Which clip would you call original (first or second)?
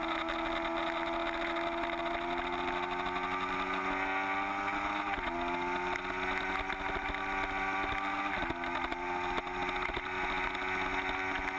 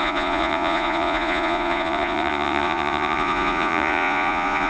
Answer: first